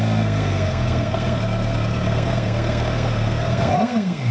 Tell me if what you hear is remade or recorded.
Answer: remade